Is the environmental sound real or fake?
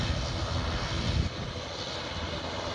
real